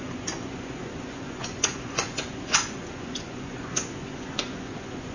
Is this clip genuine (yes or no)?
no